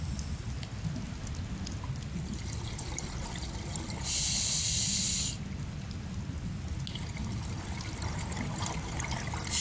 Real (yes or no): yes